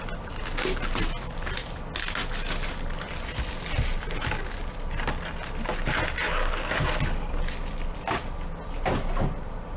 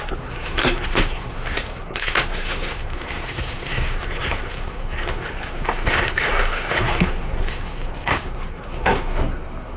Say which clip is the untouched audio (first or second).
first